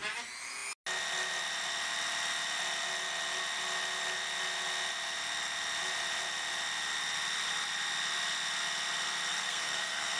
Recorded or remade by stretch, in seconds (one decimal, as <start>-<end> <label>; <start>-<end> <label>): 0.0-9.3 recorded; 9.3-10.2 remade